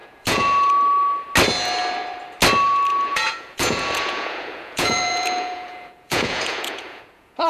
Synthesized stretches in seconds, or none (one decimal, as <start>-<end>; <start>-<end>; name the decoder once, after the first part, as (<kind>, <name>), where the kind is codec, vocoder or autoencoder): 0.0-0.7 (vocoder, Vocos); 2.9-7.5